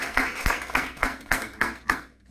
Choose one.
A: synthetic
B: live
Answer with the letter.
A